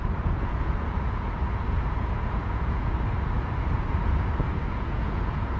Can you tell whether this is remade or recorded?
remade